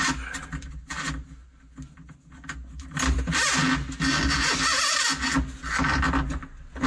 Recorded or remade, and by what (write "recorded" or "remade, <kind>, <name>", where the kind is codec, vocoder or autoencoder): recorded